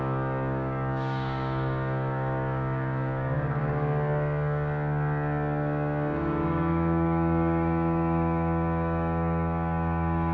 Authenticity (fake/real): fake